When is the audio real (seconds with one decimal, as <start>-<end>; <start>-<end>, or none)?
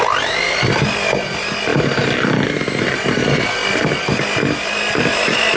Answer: 0.0-5.6